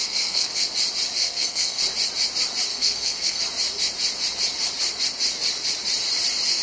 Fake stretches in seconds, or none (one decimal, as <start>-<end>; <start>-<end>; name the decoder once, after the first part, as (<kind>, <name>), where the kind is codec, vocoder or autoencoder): 0.0-0.6 (codec, SNAC); 1.2-1.8; 2.7-3.4